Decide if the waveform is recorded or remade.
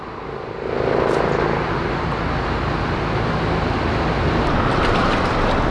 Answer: recorded